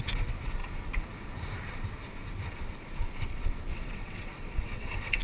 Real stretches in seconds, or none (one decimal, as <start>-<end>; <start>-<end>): 0.6-3.7

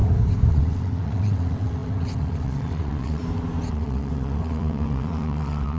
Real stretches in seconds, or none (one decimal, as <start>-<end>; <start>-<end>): 0.0-0.5; 3.2-3.7